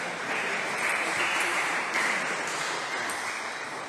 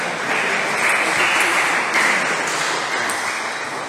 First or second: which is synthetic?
first